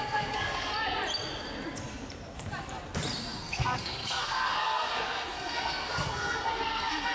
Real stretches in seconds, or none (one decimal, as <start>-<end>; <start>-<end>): 0.7-3.2